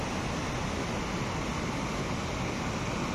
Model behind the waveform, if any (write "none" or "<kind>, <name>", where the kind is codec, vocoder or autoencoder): none